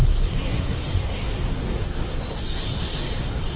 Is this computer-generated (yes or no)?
yes